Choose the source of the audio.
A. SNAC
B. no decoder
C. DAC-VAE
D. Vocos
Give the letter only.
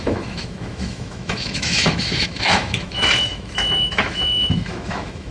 C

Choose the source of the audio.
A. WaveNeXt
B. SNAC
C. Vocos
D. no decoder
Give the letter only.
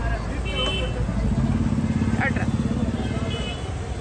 D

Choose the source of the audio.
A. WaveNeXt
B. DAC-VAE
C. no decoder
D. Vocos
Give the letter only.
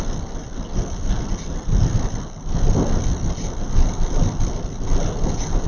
C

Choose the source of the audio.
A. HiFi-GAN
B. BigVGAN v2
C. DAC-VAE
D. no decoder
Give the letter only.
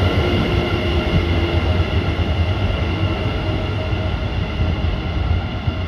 D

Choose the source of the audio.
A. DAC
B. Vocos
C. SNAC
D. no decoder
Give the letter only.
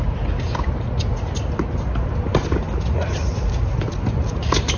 D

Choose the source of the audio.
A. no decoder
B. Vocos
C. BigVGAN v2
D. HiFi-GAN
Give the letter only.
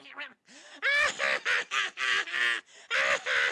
A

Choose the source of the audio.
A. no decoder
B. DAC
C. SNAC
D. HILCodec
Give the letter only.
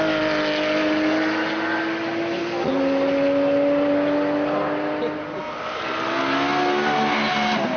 A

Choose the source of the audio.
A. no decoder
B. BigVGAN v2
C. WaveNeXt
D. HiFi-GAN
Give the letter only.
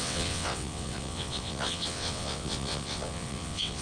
C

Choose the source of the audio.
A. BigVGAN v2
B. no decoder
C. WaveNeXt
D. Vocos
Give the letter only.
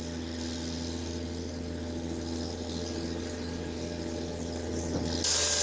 B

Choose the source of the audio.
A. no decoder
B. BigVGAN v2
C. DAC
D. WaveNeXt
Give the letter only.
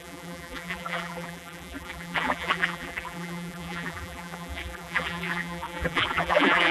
B